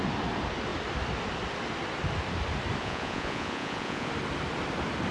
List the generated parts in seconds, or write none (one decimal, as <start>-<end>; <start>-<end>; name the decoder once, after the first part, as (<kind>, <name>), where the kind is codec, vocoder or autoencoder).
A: 2.8-4.1 (vocoder, Vocos)